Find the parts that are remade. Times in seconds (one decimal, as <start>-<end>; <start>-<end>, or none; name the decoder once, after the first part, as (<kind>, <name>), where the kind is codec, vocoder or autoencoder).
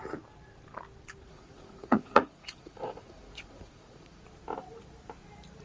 1.2-4.2 (vocoder, Vocos)